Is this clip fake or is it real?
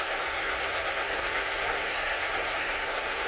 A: fake